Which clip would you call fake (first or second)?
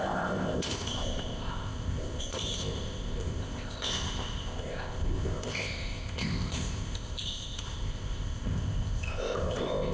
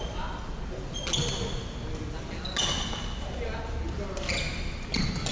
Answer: first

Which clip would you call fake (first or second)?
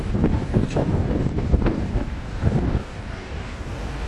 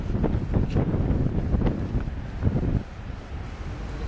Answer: first